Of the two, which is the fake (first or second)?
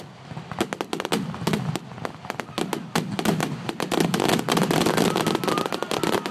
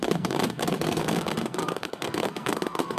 second